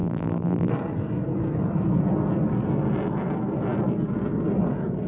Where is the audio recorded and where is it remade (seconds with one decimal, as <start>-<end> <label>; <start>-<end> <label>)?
0.0-0.7 remade; 0.7-5.1 recorded